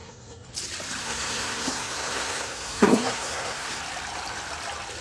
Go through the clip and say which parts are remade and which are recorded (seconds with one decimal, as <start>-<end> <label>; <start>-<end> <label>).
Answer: 0.0-0.5 remade; 0.5-1.0 recorded; 1.0-3.8 remade; 3.8-5.0 recorded